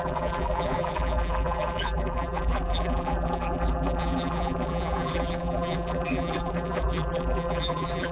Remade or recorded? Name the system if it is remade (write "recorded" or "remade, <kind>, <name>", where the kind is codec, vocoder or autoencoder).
remade, vocoder, BigVGAN v2